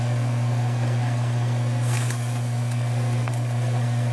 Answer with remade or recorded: remade